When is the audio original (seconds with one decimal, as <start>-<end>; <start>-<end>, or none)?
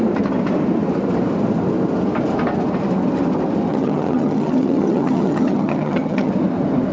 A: 0.0-3.7; 6.3-6.9